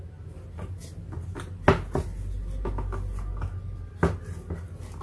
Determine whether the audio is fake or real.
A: real